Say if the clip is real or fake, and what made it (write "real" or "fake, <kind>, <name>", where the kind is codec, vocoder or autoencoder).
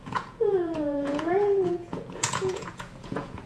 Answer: fake, vocoder, Vocos